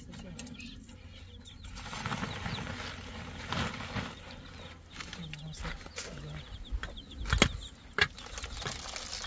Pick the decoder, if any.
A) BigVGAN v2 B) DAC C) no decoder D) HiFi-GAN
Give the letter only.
C